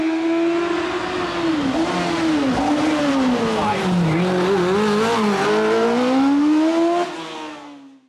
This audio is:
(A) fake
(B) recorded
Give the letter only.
B